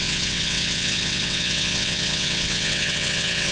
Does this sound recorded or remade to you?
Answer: remade